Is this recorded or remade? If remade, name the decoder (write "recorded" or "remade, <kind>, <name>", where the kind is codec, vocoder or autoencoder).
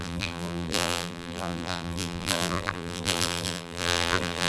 remade, vocoder, BigVGAN v2